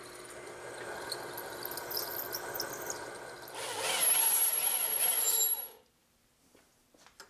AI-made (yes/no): no